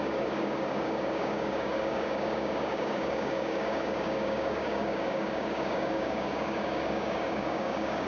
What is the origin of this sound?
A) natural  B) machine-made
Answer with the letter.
B